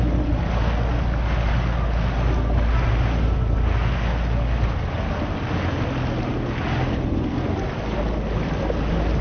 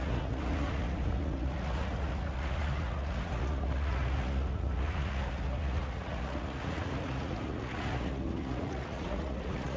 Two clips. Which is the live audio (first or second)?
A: first